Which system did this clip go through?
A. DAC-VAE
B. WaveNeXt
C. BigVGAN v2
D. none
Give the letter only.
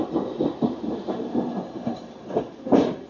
D